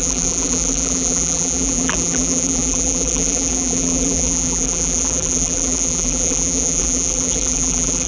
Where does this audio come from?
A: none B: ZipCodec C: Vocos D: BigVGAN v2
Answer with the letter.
D